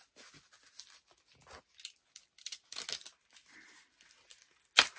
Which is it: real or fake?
real